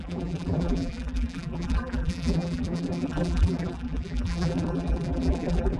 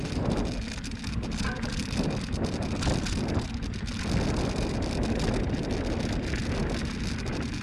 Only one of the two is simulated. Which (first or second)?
first